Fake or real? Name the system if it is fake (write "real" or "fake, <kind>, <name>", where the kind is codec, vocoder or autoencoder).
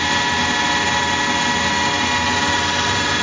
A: real